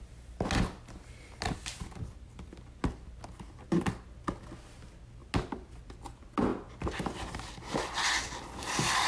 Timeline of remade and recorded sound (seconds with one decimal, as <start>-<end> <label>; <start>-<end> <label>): 0.0-9.1 recorded